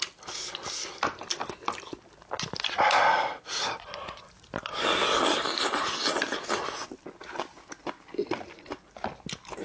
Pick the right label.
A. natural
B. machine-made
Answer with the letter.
A